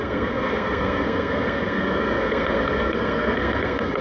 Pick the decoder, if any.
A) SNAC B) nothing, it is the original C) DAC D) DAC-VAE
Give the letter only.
A